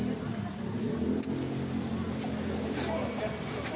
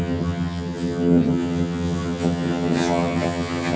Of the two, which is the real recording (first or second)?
first